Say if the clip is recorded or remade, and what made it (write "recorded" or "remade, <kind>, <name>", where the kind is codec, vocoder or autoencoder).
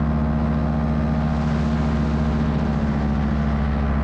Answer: recorded